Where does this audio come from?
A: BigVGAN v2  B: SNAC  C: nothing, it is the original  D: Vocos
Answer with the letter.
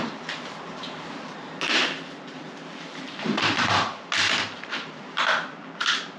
A